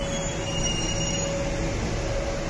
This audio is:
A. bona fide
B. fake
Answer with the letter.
A